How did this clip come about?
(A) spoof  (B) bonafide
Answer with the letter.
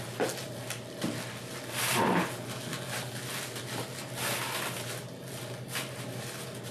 B